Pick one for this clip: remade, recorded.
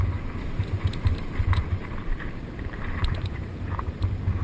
remade